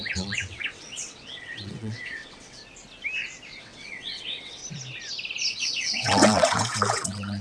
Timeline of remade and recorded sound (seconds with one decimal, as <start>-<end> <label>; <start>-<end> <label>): 0.0-2.6 remade; 2.6-3.6 recorded; 3.6-4.6 remade; 4.6-5.5 recorded; 5.5-7.4 remade